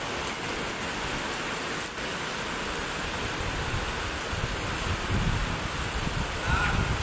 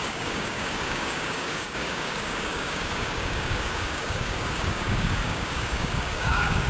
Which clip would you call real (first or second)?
first